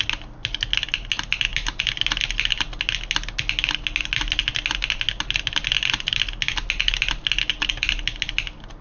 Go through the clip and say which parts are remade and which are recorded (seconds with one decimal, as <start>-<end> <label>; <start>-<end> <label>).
0.0-8.8 recorded